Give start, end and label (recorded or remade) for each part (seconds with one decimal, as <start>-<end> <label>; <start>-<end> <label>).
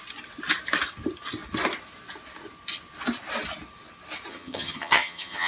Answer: 0.0-4.3 recorded; 4.3-5.5 remade